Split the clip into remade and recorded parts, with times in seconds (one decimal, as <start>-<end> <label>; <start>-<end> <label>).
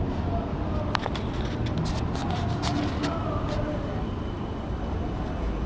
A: 0.0-5.7 recorded